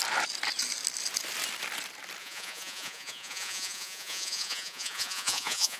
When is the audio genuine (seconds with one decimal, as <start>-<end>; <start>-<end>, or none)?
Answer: 0.0-2.2